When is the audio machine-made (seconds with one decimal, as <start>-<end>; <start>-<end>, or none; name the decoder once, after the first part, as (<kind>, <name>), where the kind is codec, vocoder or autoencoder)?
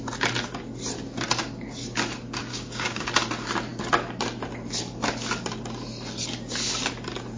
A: 2.5-3.1 (codec, DAC)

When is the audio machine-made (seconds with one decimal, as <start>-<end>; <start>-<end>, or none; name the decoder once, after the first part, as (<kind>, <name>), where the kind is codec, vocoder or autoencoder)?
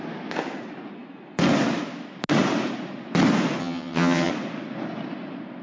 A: 3.6-4.3 (vocoder, HiFi-GAN)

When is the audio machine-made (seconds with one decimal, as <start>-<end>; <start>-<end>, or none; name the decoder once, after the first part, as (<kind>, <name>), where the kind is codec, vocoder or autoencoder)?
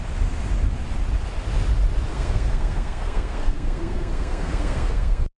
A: 2.1-5.4 (codec, SNAC)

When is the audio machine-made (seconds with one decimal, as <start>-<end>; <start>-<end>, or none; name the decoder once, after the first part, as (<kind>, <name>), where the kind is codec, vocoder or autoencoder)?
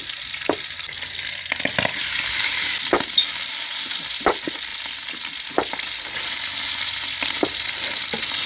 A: 4.7-6.4 (vocoder, BigVGAN v2)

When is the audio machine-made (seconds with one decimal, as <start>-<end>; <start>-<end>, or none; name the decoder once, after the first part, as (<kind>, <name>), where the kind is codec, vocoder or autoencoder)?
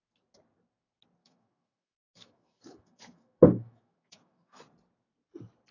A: 1.2-4.6 (autoencoder, DAC-VAE)